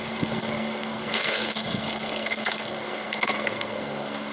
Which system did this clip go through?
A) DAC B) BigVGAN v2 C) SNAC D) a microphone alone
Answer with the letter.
C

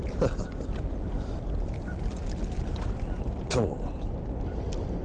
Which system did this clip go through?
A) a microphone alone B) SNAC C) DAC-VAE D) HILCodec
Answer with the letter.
A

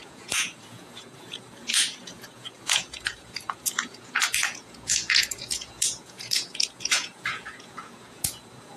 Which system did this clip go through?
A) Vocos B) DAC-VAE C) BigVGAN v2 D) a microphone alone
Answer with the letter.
A